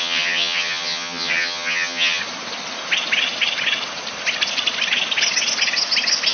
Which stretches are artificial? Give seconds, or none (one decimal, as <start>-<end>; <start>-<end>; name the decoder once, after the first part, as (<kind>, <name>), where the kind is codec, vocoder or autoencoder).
0.0-2.2 (vocoder, HiFi-GAN)